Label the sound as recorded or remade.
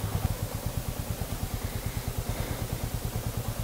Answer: recorded